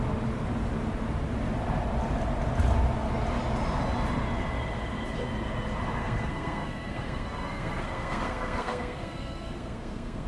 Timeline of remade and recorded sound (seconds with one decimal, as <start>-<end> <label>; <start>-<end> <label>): 0.0-6.0 recorded; 6.0-10.3 remade